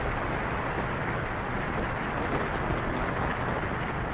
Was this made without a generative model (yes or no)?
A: yes